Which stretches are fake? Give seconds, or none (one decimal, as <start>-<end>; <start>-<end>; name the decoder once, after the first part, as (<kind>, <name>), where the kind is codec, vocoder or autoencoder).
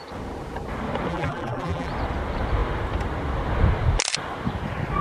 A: 1.1-1.9 (vocoder, BigVGAN v2)